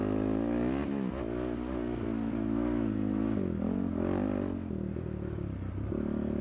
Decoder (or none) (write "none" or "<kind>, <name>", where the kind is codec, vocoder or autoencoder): none